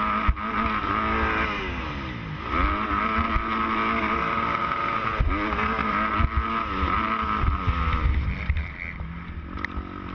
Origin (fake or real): real